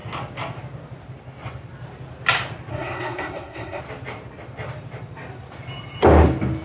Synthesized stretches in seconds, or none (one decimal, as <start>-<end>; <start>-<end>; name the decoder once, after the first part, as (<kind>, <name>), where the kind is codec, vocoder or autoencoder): 2.7-3.8 (codec, SNAC)